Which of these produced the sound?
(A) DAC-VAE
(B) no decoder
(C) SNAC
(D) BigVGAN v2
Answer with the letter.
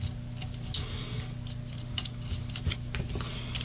B